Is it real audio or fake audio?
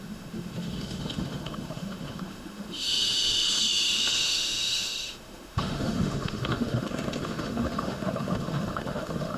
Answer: fake